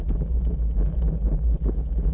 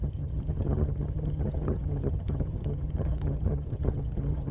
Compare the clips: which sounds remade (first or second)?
second